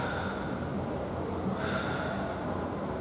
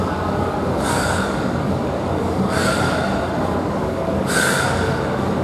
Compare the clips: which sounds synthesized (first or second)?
second